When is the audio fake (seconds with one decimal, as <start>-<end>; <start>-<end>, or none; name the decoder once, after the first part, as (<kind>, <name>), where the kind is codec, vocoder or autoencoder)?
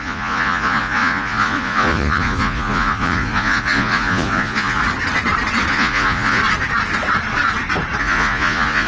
0.0-4.8 (vocoder, Vocos); 5.7-6.4; 8.0-8.9